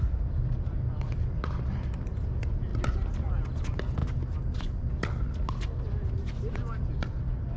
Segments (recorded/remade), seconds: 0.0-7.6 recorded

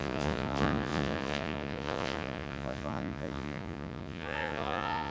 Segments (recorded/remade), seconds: 0.0-5.1 remade

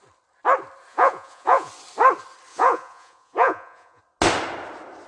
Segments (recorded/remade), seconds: 0.0-0.9 recorded; 0.9-1.7 remade; 1.7-2.5 recorded; 2.5-4.0 remade; 4.0-5.1 recorded